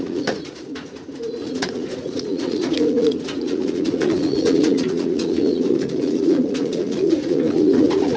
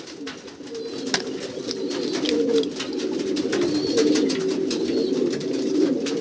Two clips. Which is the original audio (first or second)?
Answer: second